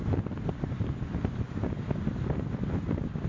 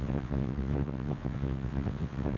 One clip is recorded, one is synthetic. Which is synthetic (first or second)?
second